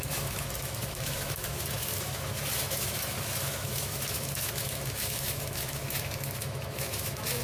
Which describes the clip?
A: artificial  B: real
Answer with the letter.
A